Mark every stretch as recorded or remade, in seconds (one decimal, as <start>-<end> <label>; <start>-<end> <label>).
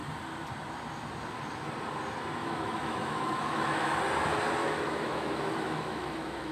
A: 0.0-2.4 recorded; 2.4-4.0 remade; 4.0-4.6 recorded; 4.6-6.5 remade